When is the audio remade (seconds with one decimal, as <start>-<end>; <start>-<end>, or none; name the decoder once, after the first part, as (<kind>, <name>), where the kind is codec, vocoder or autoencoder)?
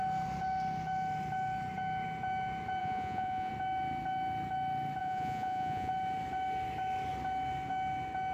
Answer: 2.8-3.5 (vocoder, Vocos); 5.0-5.9